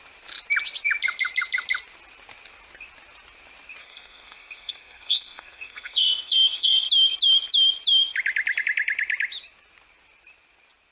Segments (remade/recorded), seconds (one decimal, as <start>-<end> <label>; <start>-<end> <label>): 0.0-3.8 recorded; 3.8-6.9 remade; 6.9-10.9 recorded